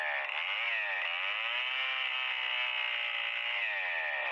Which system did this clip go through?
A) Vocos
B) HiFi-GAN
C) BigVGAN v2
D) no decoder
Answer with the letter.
D